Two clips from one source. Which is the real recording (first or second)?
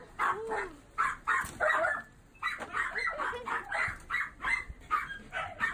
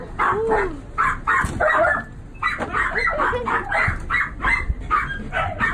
second